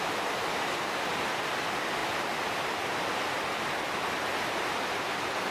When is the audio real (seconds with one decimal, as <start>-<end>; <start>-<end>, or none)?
0.0-2.0